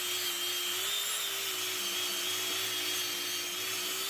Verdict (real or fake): real